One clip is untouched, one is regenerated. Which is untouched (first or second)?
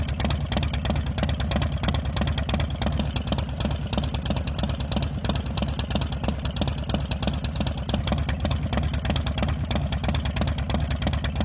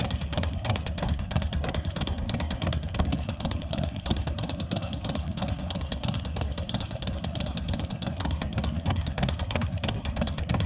first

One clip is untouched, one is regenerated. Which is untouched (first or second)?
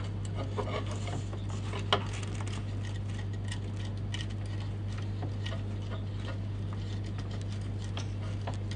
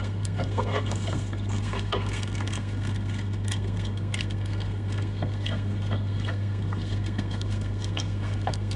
first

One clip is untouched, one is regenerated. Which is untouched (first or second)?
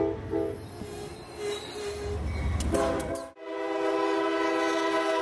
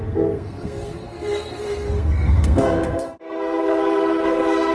first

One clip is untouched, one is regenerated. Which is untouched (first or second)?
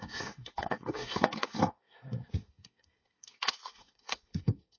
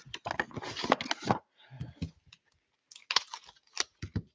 second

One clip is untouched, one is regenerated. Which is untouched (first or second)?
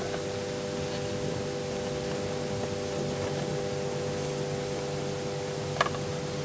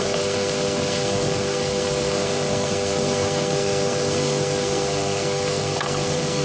first